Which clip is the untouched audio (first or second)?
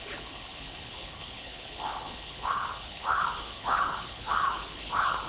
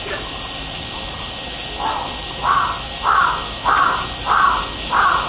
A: second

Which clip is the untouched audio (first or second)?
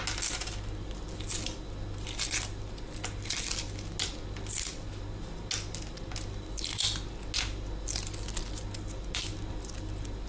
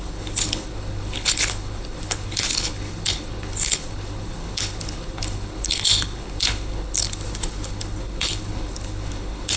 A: first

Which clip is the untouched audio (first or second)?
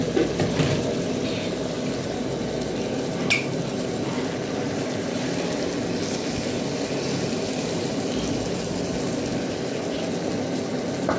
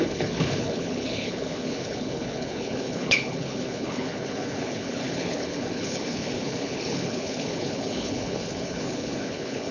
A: first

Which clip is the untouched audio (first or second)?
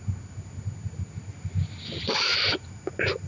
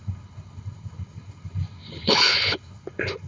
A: first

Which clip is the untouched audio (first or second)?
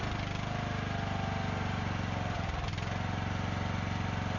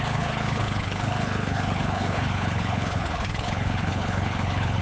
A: first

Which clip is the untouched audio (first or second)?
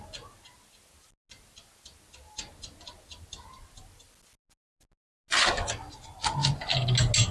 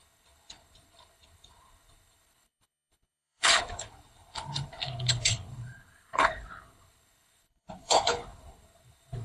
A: first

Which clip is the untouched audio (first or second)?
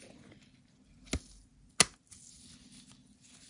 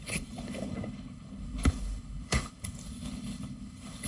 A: first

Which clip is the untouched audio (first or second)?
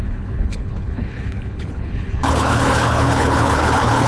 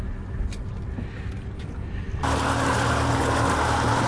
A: second